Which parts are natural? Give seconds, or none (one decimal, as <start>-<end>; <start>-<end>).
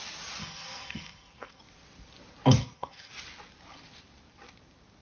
0.0-0.4; 1.6-2.6; 3.1-5.0